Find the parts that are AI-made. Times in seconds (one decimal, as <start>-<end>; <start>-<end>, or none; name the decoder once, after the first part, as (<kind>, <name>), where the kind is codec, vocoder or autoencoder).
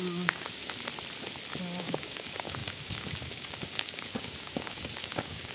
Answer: 0.0-0.6 (codec, DAC); 1.8-5.5